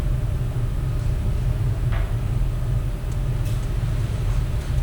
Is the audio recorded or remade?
recorded